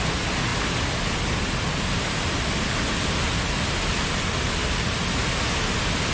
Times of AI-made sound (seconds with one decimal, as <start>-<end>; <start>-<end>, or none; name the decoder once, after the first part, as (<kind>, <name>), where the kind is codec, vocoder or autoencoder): none